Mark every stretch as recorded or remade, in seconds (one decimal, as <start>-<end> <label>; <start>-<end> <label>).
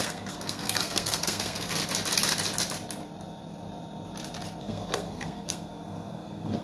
0.0-1.8 remade; 1.8-4.6 recorded; 4.6-6.6 remade